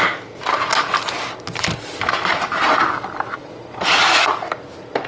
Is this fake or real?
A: real